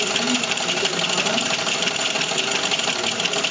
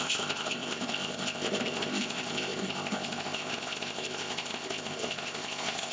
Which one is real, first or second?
first